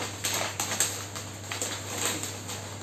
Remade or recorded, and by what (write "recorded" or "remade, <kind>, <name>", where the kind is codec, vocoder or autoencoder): recorded